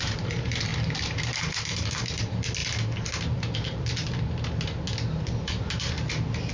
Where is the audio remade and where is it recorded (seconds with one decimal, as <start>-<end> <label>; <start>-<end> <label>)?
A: 0.0-0.7 remade; 0.7-1.4 recorded; 1.4-2.6 remade; 2.6-3.2 recorded; 3.2-4.0 remade; 4.0-5.4 recorded; 5.4-6.5 remade